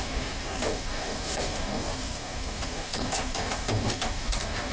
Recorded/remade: remade